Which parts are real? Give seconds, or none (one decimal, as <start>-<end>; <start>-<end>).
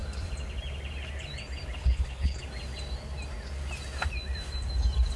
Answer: 0.0-1.8; 2.4-5.2